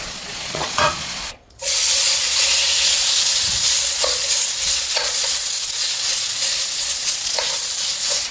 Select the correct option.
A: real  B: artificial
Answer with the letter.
B